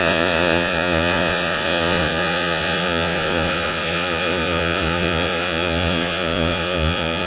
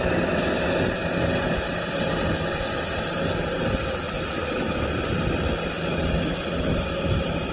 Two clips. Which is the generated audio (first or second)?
first